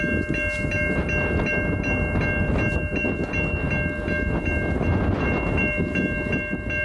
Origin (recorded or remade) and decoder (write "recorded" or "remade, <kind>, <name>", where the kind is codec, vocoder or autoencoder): recorded